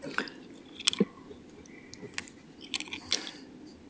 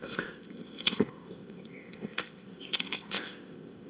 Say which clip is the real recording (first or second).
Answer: first